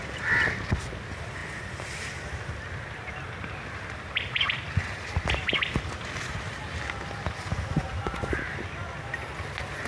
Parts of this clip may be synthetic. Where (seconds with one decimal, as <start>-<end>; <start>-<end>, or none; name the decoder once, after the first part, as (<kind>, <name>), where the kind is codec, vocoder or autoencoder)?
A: 7.9-8.4 (vocoder, BigVGAN v2)